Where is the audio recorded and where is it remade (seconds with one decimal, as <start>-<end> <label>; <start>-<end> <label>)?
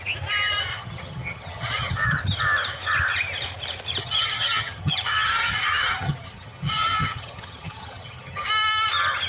0.0-0.7 recorded; 0.7-2.2 remade; 2.2-4.0 recorded; 4.0-8.5 remade; 8.5-9.3 recorded